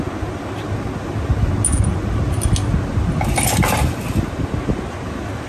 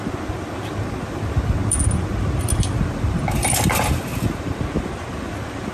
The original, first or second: first